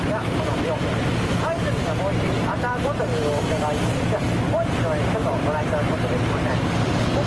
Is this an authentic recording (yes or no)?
yes